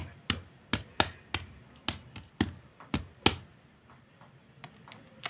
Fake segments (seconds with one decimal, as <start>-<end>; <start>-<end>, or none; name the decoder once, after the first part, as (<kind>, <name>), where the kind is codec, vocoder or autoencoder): none